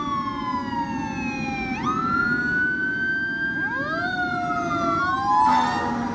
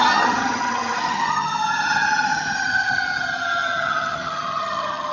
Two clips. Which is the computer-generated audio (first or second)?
second